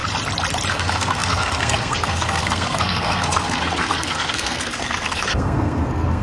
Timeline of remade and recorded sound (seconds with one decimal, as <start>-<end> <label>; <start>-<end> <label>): 0.0-0.7 recorded; 0.7-6.2 remade